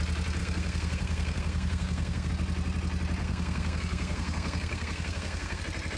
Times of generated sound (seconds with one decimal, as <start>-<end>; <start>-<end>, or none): 0.4-2.3; 3.2-5.6